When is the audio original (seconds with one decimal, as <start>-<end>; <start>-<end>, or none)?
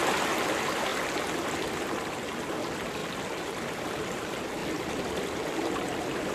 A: 0.0-6.3